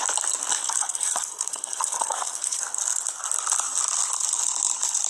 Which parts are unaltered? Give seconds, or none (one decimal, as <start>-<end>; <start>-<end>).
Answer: 0.0-0.5; 2.6-5.1